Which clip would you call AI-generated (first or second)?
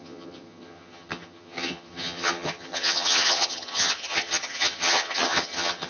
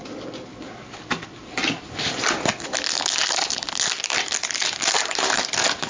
first